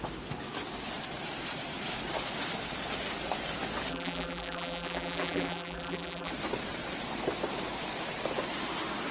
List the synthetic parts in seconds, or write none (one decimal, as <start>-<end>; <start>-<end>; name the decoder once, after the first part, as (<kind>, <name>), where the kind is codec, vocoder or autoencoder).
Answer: 3.9-6.3 (vocoder, BigVGAN v2)